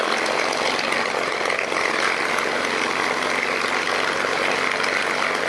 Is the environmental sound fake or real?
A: real